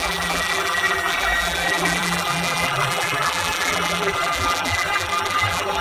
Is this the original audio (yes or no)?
no